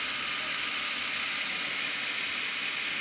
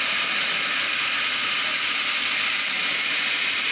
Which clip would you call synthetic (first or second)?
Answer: second